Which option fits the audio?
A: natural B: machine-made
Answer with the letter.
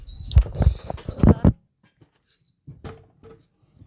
A